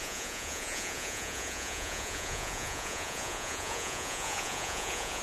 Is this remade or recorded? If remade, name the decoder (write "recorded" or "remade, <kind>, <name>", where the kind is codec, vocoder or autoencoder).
remade, vocoder, Vocos